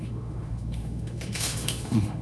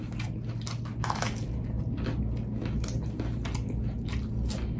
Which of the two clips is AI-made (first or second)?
first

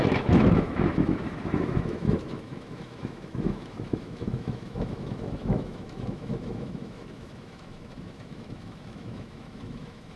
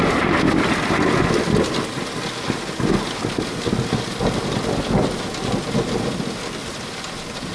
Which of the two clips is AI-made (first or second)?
first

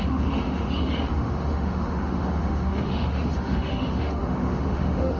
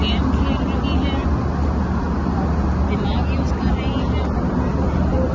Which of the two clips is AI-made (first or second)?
first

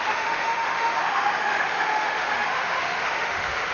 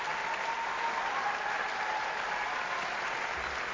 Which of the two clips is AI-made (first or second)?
first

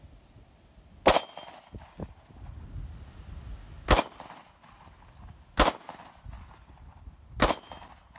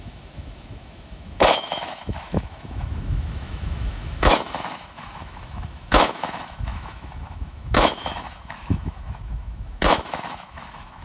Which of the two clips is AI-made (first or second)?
second